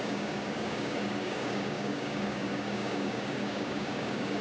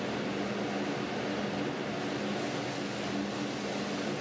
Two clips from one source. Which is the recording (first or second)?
second